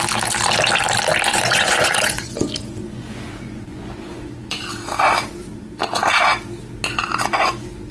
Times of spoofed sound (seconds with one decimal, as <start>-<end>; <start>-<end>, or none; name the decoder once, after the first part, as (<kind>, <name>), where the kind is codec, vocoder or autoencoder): 1.3-4.7 (vocoder, Vocos); 6.9-7.9